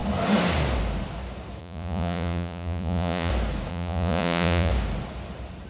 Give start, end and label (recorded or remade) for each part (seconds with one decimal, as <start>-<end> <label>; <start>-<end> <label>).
0.0-1.6 recorded; 1.6-3.3 remade; 3.3-3.7 recorded; 3.7-4.7 remade; 4.7-5.7 recorded

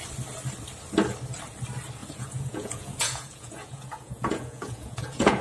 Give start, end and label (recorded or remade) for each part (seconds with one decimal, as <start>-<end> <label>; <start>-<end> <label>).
0.0-2.0 recorded; 2.0-5.4 remade

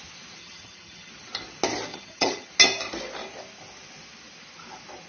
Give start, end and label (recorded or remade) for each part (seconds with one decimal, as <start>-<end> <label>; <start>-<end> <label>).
0.0-0.4 recorded; 0.4-1.1 remade; 1.1-1.9 recorded; 1.9-2.5 remade; 2.5-5.1 recorded